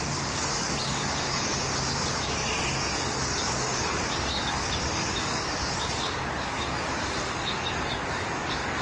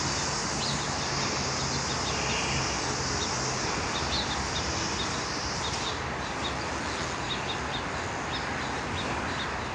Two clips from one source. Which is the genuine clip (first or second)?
second